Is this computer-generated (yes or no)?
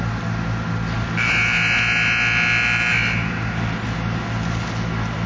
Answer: no